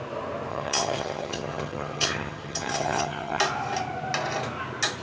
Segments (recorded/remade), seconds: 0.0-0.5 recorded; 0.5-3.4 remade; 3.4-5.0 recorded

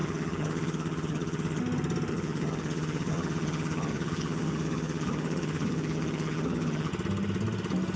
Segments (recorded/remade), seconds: 0.0-1.6 remade; 1.6-2.1 recorded; 2.1-6.9 remade; 6.9-8.0 recorded

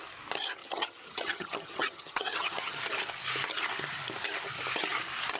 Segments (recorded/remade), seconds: 0.0-0.6 recorded; 0.6-2.8 remade; 2.8-5.4 recorded

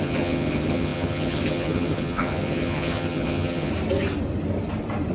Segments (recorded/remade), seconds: 0.0-3.7 remade; 3.7-5.1 recorded

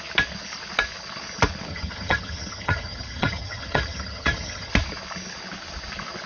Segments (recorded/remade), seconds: 0.0-1.7 recorded; 1.7-4.7 remade; 4.7-6.3 recorded

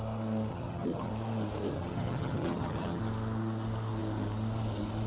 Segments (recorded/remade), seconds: 0.0-0.5 recorded; 0.5-1.1 remade; 1.1-1.7 recorded; 1.7-3.0 remade; 3.0-5.1 recorded

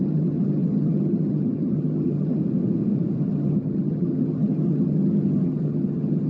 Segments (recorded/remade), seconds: 0.0-2.4 remade; 2.4-3.2 recorded; 3.2-6.3 remade

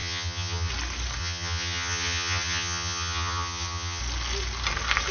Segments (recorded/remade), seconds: 0.0-0.7 remade; 0.7-1.2 recorded; 1.2-4.0 remade; 4.0-5.1 recorded